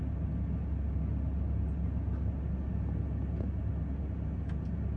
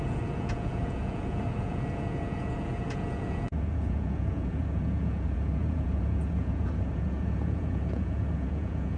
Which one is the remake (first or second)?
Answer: second